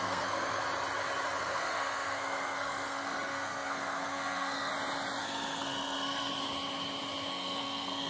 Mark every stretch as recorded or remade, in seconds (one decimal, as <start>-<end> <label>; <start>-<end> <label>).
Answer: 0.0-0.6 remade; 0.6-1.4 recorded; 1.4-4.7 remade; 4.7-5.2 recorded; 5.2-6.3 remade; 6.3-7.3 recorded; 7.3-8.1 remade